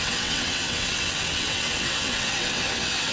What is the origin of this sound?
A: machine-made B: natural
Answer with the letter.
A